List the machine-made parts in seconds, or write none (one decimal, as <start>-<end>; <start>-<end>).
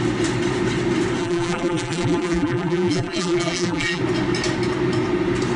1.2-4.0